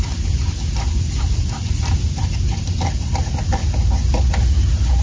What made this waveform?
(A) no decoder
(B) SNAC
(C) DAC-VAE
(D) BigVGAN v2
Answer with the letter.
A